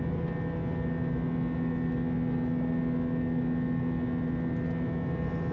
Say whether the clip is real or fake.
real